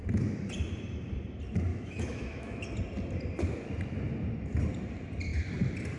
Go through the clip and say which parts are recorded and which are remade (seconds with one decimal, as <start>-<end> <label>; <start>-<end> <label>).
0.0-1.7 recorded; 1.7-2.6 remade; 2.6-6.0 recorded

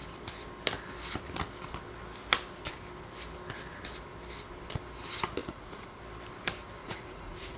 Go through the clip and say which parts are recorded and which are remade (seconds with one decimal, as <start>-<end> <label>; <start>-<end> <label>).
0.0-5.4 recorded; 5.4-6.0 remade; 6.0-6.8 recorded; 6.8-7.6 remade

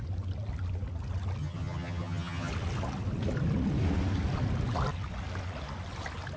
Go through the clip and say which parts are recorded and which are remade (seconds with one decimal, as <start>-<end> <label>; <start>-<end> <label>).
0.0-1.4 recorded; 1.4-2.5 remade; 2.5-6.4 recorded

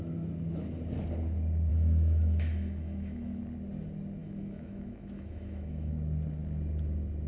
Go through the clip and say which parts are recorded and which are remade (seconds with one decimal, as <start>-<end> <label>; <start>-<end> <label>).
0.0-1.7 recorded; 1.7-3.4 remade; 3.4-4.2 recorded; 4.2-5.9 remade; 5.9-7.3 recorded

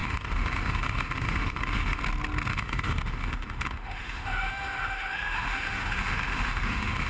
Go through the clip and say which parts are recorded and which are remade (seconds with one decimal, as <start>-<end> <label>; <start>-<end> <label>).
0.0-2.0 remade; 2.0-2.5 recorded; 2.5-7.1 remade

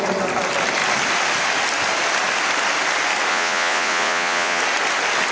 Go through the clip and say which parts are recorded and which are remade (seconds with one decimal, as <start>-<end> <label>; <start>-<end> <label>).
0.0-3.3 recorded; 3.3-4.6 remade; 4.6-5.3 recorded